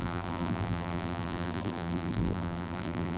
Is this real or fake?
fake